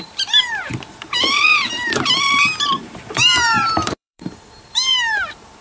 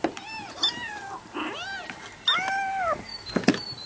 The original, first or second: second